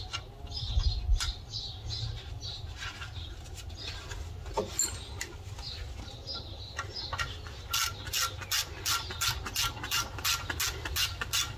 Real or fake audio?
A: real